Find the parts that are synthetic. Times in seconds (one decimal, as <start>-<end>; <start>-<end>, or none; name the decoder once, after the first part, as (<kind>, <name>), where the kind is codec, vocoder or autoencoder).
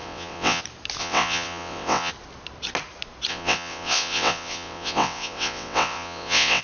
0.0-0.6 (vocoder, WaveNeXt); 1.0-2.1; 3.3-6.6